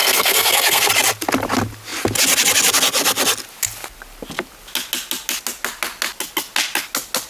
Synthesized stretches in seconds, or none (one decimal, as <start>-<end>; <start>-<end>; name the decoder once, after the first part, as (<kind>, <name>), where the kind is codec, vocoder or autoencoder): 0.0-0.9 (codec, SNAC)